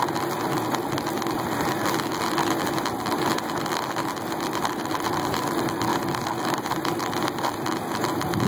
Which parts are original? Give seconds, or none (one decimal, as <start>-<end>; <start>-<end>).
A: 0.0-8.5